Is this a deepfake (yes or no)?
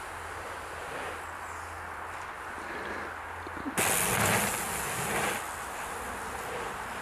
no